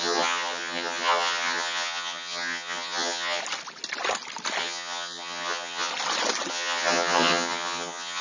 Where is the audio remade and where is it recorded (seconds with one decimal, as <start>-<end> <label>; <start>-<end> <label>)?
0.0-3.4 remade; 3.4-4.6 recorded; 4.6-5.9 remade; 5.9-6.5 recorded; 6.5-8.2 remade